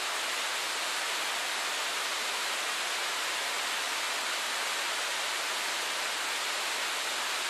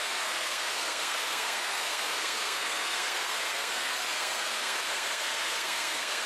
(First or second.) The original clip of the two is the first